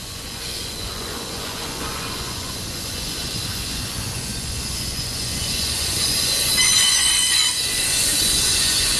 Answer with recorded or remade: remade